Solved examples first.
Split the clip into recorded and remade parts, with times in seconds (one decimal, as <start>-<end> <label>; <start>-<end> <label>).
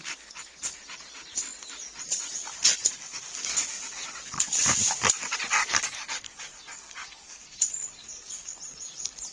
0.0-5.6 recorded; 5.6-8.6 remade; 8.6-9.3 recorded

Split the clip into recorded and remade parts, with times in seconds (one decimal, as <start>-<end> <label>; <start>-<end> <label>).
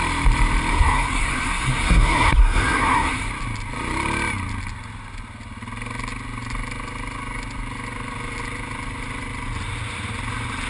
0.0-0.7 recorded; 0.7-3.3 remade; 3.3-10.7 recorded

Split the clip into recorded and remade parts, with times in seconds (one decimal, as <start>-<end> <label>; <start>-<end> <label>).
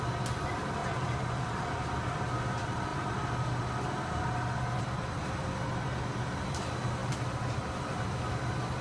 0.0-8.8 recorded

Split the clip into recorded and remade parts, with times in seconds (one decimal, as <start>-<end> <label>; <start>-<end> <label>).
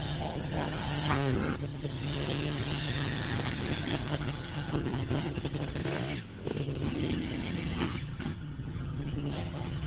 0.0-5.8 remade; 5.8-6.6 recorded; 6.6-9.9 remade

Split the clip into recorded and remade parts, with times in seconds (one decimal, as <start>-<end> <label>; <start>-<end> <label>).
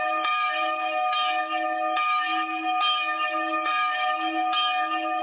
0.0-5.2 remade